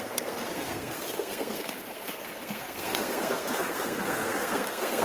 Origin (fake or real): fake